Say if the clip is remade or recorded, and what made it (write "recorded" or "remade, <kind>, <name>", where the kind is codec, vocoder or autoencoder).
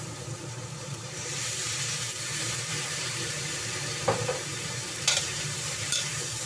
remade, vocoder, BigVGAN v2